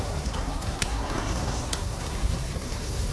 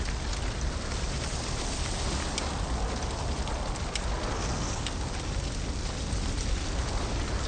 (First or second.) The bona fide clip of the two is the second